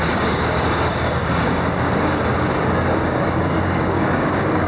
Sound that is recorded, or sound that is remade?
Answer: remade